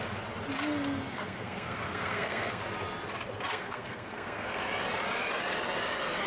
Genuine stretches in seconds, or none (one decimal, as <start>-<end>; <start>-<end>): 0.0-1.1; 2.6-3.5; 4.6-6.3